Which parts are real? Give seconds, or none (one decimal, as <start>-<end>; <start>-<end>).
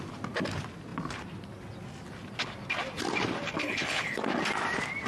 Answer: 0.0-3.6; 4.2-5.1